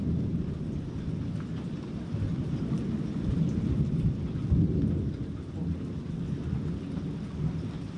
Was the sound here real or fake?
real